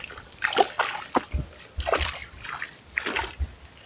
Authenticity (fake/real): real